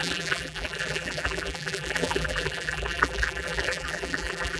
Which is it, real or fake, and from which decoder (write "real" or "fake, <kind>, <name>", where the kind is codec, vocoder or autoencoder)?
fake, vocoder, BigVGAN v2